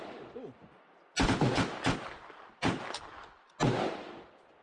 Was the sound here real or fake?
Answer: real